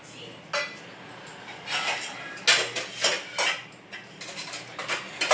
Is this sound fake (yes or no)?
no